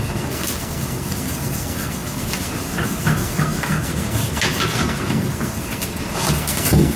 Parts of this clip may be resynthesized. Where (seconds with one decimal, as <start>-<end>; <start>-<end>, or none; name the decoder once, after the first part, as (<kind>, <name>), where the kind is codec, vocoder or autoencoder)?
0.0-7.0 (codec, SNAC)